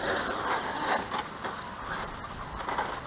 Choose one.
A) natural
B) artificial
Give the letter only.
A